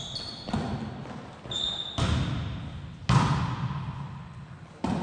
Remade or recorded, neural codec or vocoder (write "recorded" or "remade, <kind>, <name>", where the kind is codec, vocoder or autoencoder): recorded